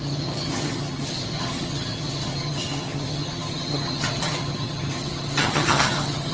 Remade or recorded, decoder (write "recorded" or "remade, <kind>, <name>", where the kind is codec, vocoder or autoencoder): remade, vocoder, HiFi-GAN